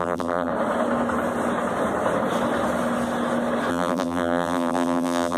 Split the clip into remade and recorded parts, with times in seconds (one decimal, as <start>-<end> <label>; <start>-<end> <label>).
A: 0.0-0.5 remade; 0.5-3.7 recorded; 3.7-5.4 remade